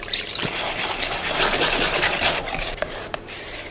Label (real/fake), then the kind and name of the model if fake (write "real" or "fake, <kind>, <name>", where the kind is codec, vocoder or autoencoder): fake, vocoder, BigVGAN v2